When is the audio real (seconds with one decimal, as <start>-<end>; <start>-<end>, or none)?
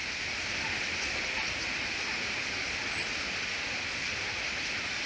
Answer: 0.0-5.1